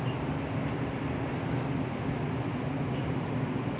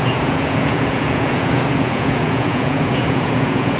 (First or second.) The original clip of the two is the first